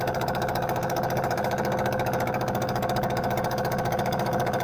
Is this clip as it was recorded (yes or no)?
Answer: no